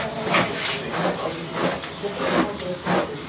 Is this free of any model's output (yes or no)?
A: yes